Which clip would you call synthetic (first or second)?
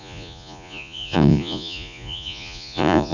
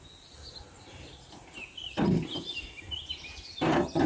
first